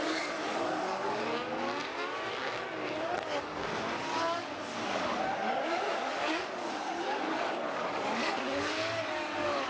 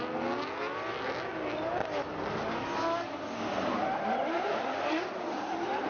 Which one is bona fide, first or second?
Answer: second